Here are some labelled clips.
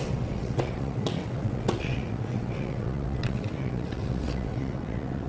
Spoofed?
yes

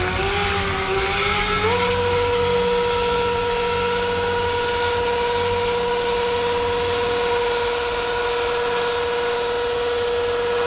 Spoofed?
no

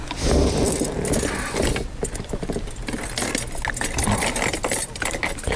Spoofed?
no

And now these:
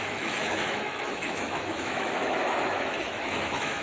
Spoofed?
yes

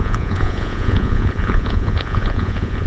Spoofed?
yes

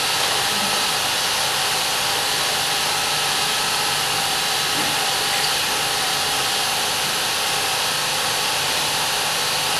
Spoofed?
yes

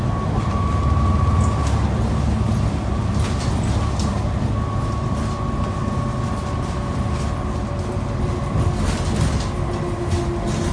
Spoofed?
no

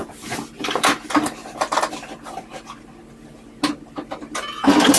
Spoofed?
no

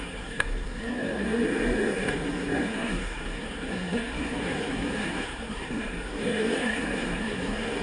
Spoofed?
yes